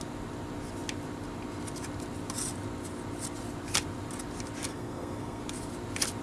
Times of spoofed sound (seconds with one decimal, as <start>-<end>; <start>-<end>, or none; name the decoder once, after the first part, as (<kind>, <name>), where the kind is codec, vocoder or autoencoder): 4.7-5.4 (codec, SNAC)